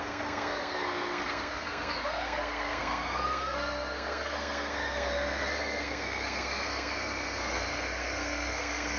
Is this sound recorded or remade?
remade